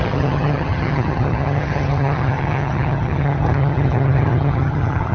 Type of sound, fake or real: fake